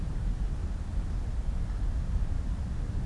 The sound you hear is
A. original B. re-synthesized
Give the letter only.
A